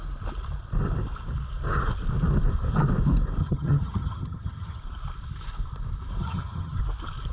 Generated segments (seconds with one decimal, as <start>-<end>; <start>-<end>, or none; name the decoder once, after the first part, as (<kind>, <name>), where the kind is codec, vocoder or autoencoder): 3.4-4.8 (vocoder, HiFi-GAN); 6.2-6.8